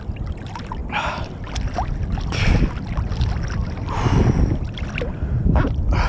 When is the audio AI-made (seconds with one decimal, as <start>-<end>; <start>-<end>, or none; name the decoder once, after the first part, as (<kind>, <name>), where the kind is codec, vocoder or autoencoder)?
none